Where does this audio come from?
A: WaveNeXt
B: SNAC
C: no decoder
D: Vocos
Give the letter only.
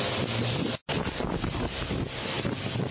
C